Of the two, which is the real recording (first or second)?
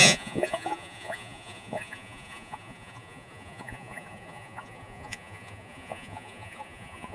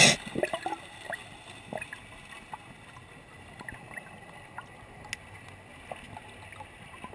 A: second